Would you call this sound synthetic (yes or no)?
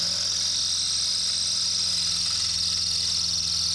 no